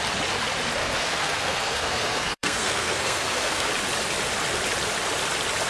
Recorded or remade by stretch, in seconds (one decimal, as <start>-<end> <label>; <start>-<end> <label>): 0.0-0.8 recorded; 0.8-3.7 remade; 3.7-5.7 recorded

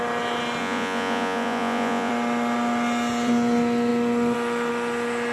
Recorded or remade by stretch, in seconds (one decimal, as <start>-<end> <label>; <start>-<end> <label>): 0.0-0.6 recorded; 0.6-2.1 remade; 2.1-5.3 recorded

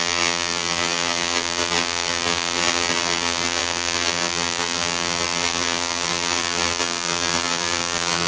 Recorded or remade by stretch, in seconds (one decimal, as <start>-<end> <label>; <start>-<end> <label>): 0.0-8.3 remade

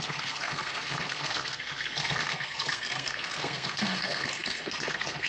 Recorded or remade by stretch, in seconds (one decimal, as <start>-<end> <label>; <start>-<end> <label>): 0.0-5.3 remade